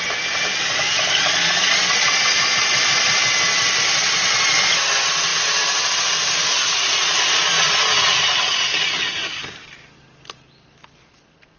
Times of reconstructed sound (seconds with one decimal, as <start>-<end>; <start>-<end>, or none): 0.5-3.2